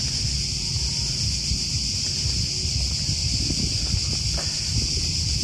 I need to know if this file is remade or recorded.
recorded